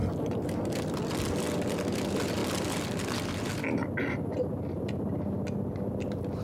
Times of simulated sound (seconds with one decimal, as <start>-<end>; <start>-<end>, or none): none